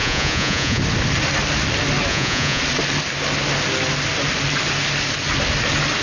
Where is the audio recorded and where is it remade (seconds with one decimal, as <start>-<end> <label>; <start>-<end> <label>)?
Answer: 0.0-0.8 remade; 0.8-2.1 recorded; 2.1-2.6 remade; 2.6-6.0 recorded